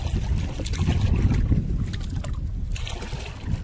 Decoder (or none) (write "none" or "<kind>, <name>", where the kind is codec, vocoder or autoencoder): none